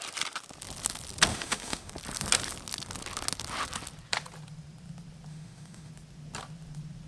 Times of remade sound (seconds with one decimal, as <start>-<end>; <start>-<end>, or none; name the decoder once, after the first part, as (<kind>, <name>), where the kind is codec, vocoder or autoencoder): 1.3-1.9 (autoencoder, DAC-VAE); 5.3-5.9